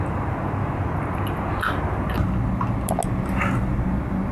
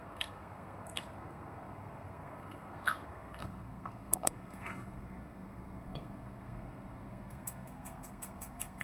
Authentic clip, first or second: first